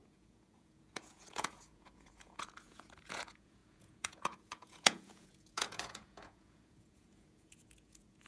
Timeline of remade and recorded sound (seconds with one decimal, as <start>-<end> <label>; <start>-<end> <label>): 0.0-8.3 remade

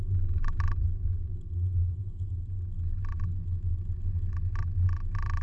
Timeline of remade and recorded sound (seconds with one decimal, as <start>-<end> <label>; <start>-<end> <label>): 0.0-5.4 recorded

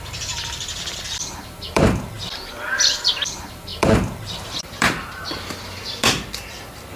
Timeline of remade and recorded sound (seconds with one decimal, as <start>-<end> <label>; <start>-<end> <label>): 0.0-7.0 remade

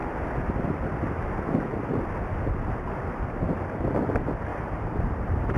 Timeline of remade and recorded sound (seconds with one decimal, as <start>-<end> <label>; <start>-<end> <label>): 0.0-4.5 recorded; 4.5-5.6 remade

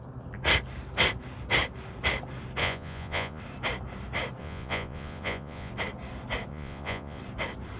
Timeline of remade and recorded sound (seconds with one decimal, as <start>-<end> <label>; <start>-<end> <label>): 0.0-2.6 recorded; 2.6-3.4 remade; 3.4-4.4 recorded; 4.4-5.7 remade; 5.7-6.5 recorded; 6.5-7.2 remade; 7.2-7.8 recorded

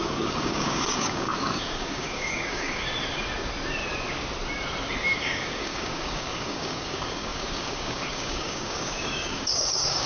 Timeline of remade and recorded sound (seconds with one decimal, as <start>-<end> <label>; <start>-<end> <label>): 0.0-2.9 remade; 2.9-5.2 recorded; 5.2-10.1 remade